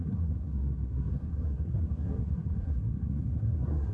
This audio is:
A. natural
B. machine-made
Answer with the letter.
B